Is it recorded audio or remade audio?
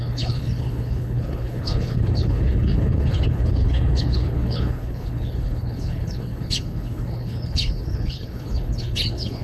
remade